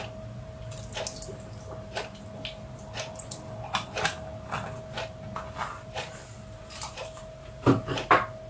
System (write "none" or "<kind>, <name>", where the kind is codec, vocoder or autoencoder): none